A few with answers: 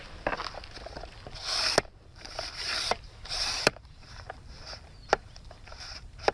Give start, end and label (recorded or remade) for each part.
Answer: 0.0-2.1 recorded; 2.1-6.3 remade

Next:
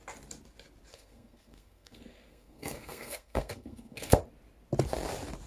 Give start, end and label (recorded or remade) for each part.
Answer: 0.0-0.9 recorded; 0.9-4.2 remade; 4.2-5.5 recorded

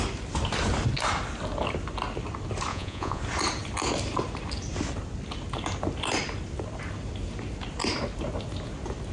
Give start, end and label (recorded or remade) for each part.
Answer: 0.0-2.7 recorded; 2.7-3.2 remade; 3.2-9.1 recorded

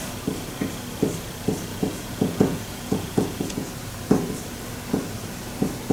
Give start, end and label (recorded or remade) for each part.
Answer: 0.0-1.7 recorded; 1.7-3.7 remade; 3.7-5.9 recorded

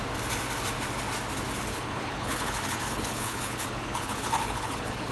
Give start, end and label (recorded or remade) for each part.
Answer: 0.0-1.6 recorded; 1.6-5.1 remade